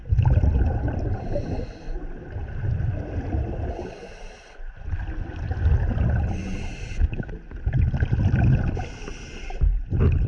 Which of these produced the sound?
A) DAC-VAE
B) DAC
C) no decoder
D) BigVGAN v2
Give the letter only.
C